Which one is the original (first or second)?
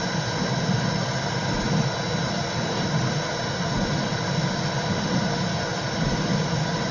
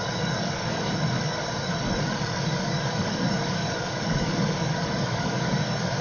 first